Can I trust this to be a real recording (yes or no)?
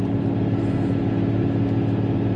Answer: yes